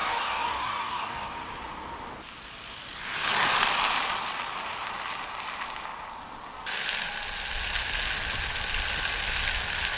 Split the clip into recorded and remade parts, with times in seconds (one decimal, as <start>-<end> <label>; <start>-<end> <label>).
0.0-1.3 remade; 1.3-10.0 recorded